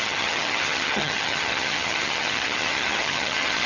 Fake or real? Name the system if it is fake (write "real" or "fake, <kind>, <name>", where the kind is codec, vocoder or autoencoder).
fake, vocoder, HiFi-GAN